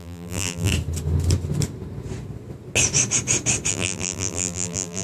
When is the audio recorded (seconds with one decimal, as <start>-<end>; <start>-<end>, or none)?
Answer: 0.7-3.7